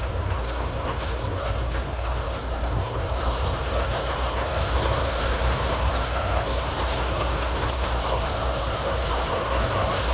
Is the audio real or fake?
fake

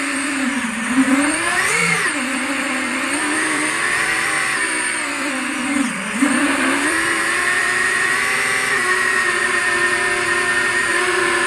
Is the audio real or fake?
fake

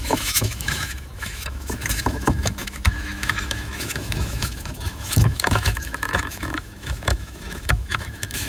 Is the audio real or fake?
fake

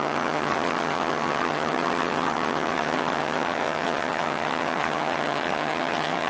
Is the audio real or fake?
fake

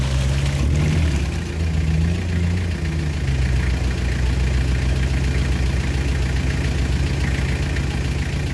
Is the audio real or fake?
real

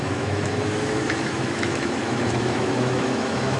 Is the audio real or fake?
fake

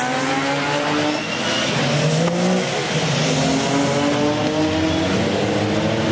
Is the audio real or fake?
real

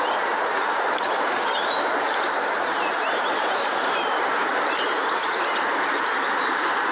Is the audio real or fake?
fake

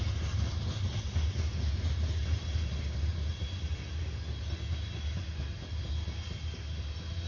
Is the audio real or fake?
real